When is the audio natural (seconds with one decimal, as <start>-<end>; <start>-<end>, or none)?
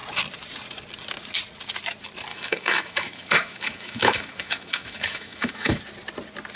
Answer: 0.0-2.3; 5.8-6.6